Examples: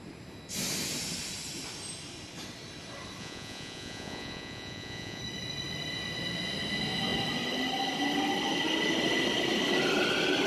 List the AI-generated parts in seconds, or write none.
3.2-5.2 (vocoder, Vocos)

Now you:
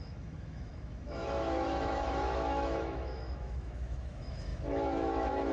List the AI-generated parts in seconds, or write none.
0.0-5.5 (autoencoder, DAC-VAE)

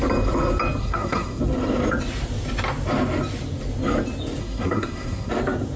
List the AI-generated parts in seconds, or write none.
0.8-1.4 (codec, SNAC); 4.4-5.3

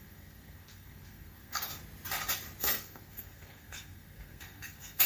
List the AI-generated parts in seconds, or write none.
0.0-1.7 (codec, SNAC); 2.6-5.1

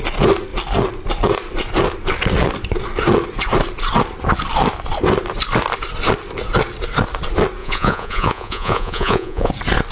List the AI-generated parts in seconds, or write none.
7.6-9.5 (vocoder, Vocos)

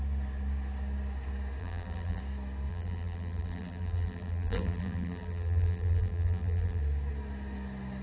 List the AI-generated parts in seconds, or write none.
1.6-2.2 (vocoder, BigVGAN v2); 2.7-6.8